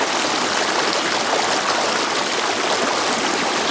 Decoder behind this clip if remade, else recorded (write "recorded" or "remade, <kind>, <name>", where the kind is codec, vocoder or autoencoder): recorded